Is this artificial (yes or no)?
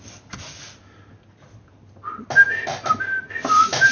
no